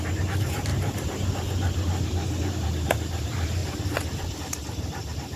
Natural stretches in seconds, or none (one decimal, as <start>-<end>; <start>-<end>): 0.7-2.5; 3.6-4.4